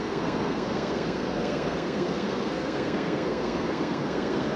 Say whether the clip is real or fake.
fake